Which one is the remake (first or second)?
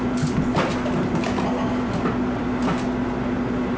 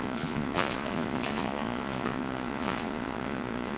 second